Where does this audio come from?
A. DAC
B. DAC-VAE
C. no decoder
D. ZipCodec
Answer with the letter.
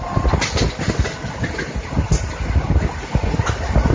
C